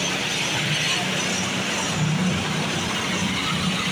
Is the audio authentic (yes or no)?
yes